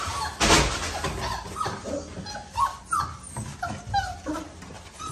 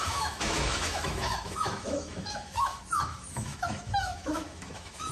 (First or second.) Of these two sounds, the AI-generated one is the second